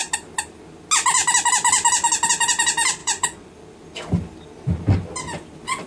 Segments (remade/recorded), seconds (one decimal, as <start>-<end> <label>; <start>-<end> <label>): 0.0-3.0 recorded; 3.0-3.5 remade; 3.5-5.9 recorded